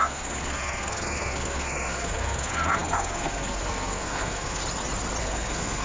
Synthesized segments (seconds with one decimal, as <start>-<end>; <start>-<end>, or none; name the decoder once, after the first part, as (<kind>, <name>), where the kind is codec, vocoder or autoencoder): 0.0-4.6 (codec, SNAC); 5.2-5.8